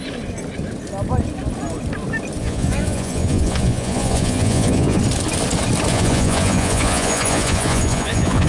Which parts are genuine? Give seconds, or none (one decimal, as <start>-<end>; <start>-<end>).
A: 0.0-2.4; 5.0-5.9